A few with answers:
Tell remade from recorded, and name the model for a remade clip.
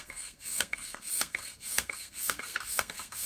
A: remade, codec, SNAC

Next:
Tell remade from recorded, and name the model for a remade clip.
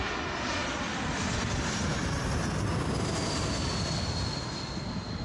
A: recorded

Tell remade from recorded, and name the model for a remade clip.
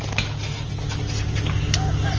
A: recorded